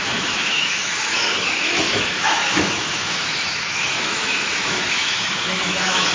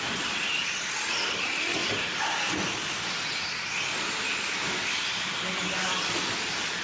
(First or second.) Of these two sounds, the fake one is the first